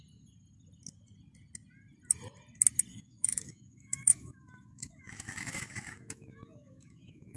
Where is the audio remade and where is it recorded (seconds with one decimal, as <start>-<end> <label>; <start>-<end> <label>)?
0.0-2.9 recorded; 2.9-7.4 remade